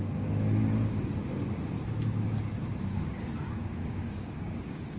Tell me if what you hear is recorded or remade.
remade